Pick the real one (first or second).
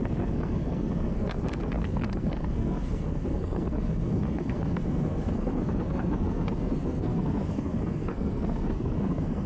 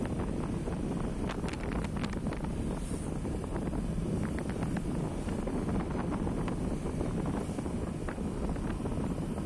second